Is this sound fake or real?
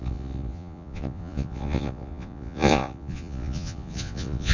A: fake